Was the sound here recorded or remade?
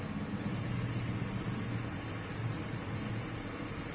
recorded